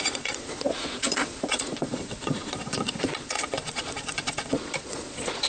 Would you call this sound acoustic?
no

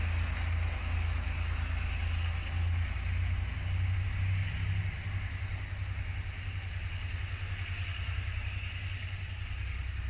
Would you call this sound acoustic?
yes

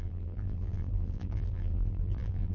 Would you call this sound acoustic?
no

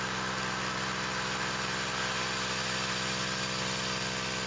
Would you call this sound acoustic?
yes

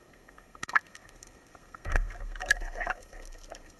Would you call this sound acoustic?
no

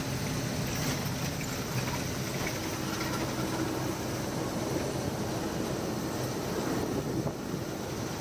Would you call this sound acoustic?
yes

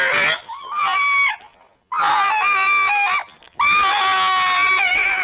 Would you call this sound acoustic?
yes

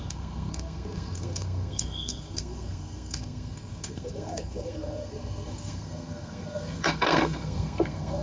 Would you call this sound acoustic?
no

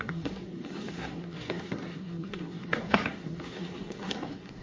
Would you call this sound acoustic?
no